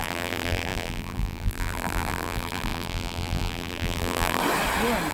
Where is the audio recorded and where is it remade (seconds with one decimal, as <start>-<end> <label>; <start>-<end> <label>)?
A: 0.0-4.4 remade; 4.4-5.1 recorded